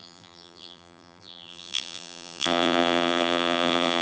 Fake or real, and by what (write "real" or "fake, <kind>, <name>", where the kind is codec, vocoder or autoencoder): fake, vocoder, BigVGAN v2